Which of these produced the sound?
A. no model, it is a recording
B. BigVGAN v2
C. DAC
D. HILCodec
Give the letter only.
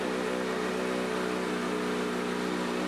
A